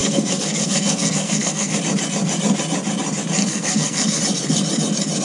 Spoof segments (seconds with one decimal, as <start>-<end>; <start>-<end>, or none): 0.0-1.8; 3.4-4.2